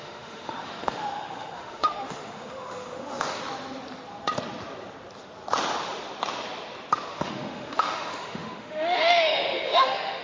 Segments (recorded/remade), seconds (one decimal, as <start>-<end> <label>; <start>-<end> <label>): 0.0-3.4 remade; 3.4-7.1 recorded; 7.1-10.2 remade